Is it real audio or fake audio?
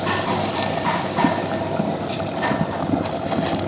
real